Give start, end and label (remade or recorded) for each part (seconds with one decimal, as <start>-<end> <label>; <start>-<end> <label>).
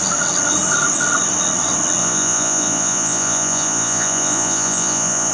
0.0-2.0 recorded; 2.0-5.3 remade